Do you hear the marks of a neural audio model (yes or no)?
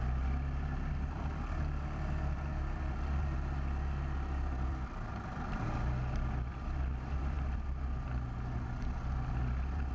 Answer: no